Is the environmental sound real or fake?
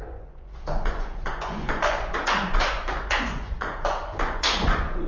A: fake